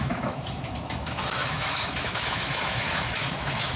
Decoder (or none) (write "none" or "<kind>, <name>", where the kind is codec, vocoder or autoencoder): autoencoder, DAC-VAE